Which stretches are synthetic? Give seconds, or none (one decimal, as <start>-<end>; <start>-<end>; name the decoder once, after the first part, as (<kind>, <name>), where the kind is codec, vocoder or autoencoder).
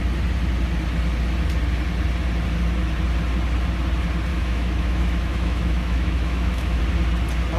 4.3-6.8 (autoencoder, DAC-VAE)